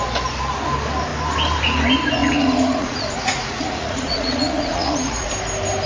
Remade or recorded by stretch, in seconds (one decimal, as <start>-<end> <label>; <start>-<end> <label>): 0.0-2.2 recorded; 2.2-5.3 remade; 5.3-5.9 recorded